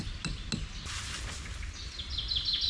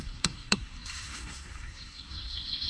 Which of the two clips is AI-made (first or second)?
second